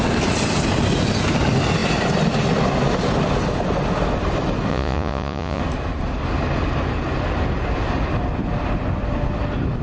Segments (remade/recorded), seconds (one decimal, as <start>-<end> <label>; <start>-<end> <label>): 0.0-4.7 recorded; 4.7-5.6 remade; 5.6-9.8 recorded

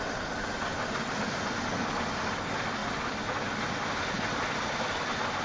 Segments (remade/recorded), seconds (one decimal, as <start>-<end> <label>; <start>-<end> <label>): 0.0-5.4 recorded

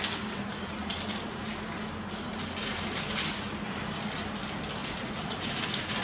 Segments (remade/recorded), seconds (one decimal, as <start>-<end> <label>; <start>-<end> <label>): 0.0-4.8 recorded; 4.8-5.4 remade; 5.4-6.0 recorded

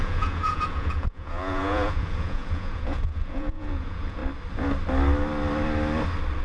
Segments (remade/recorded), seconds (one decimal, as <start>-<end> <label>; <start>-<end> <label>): 0.0-4.2 remade; 4.2-6.4 recorded